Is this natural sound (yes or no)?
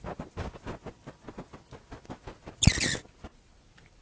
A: yes